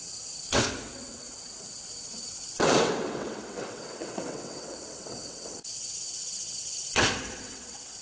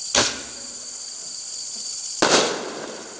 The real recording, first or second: second